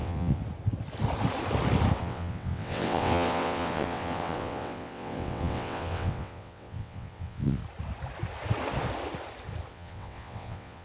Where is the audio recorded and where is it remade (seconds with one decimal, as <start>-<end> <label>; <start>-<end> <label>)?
0.0-0.4 remade; 0.4-2.0 recorded; 2.0-7.6 remade; 7.6-9.7 recorded; 9.7-10.8 remade